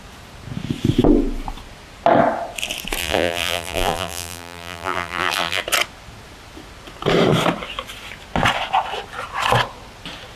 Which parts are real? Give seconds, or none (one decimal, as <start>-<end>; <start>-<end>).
0.0-3.0; 5.6-10.4